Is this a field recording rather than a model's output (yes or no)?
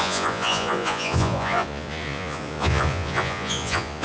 no